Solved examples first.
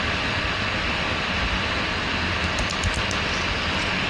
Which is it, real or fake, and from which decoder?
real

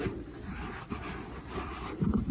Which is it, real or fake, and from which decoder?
real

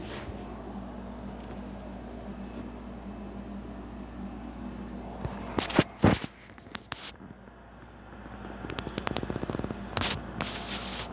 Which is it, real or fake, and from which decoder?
real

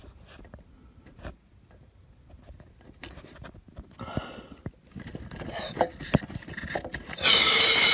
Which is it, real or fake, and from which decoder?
real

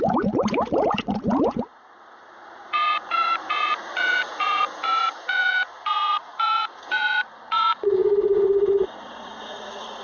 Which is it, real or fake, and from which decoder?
fake, vocoder, Vocos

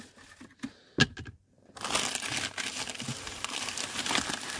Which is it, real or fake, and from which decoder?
real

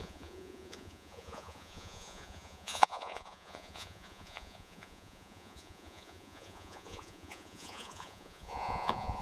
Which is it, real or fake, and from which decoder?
fake, vocoder, Vocos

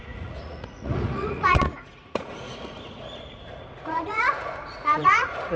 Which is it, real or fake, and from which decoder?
fake, vocoder, Vocos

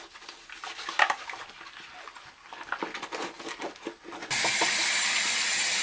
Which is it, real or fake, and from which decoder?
real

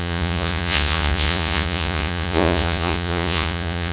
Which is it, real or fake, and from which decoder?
fake, vocoder, Vocos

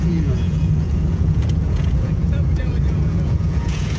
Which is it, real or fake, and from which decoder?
fake, vocoder, Vocos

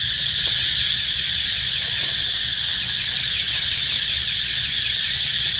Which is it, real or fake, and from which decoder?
fake, vocoder, Vocos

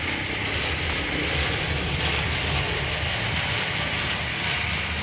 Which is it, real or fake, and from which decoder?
real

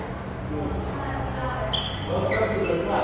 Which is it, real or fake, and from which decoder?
real